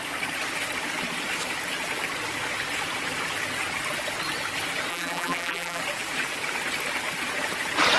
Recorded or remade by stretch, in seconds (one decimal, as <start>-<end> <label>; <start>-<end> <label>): 0.0-4.9 recorded; 4.9-5.8 remade; 5.8-8.0 recorded